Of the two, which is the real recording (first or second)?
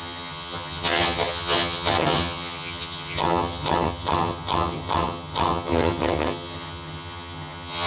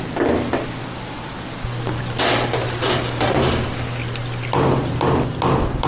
second